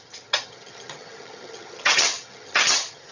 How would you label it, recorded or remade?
remade